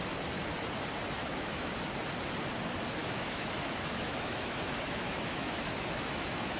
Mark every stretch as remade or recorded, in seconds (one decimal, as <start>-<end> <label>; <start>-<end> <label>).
0.0-1.2 recorded; 1.2-1.7 remade; 1.7-3.0 recorded; 3.0-6.6 remade